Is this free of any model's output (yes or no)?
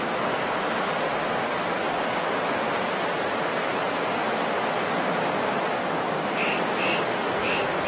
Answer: yes